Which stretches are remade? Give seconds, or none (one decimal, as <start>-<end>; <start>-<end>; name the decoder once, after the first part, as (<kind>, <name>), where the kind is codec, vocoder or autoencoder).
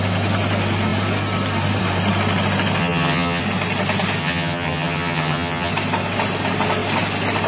2.8-3.4 (vocoder, HiFi-GAN); 4.2-5.7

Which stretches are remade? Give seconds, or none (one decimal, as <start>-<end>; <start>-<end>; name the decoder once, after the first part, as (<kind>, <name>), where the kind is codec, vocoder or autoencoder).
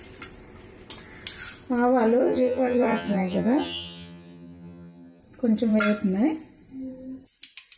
2.2-5.2 (vocoder, HiFi-GAN)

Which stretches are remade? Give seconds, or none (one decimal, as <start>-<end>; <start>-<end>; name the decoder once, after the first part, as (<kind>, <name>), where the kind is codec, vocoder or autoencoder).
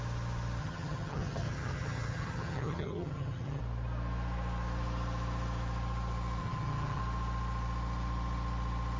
0.6-3.6 (vocoder, HiFi-GAN); 6.4-7.0